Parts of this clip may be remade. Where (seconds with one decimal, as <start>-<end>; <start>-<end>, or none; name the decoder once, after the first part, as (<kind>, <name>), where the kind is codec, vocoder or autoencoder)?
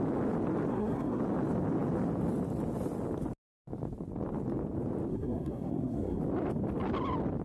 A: 0.7-1.2 (codec, SNAC); 5.1-6.2